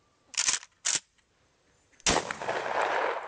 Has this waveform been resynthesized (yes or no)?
no